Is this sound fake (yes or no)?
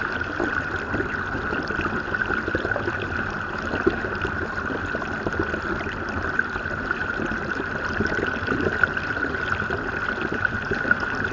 yes